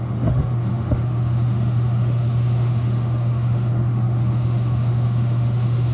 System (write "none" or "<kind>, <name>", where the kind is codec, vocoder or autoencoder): autoencoder, DAC-VAE